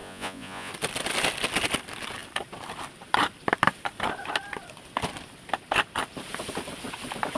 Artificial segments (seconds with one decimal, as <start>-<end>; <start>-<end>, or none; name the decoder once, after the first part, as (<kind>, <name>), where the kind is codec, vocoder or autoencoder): 0.0-0.7 (vocoder, Vocos)

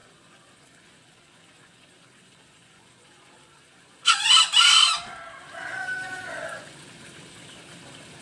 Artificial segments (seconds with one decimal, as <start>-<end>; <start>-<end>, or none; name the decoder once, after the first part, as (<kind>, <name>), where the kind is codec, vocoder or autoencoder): 0.0-4.3 (vocoder, Vocos); 5.7-6.9

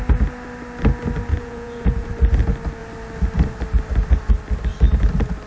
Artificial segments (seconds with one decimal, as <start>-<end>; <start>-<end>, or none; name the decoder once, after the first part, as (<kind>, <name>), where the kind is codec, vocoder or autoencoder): 1.3-2.1 (vocoder, Vocos)